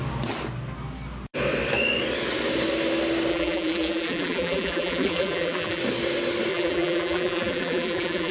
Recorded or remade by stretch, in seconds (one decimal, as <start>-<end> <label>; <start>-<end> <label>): 0.0-3.3 recorded; 3.3-5.8 remade; 5.8-6.5 recorded; 6.5-8.3 remade